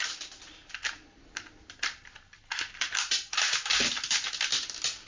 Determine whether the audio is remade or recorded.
recorded